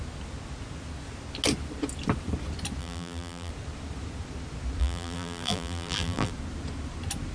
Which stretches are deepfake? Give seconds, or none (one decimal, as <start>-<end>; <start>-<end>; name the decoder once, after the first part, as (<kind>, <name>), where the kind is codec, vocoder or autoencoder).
2.8-3.5 (vocoder, BigVGAN v2); 4.8-6.3